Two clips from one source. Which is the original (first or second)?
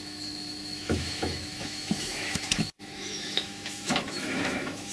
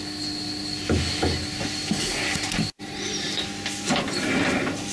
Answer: second